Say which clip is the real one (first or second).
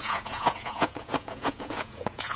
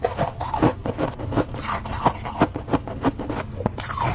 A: second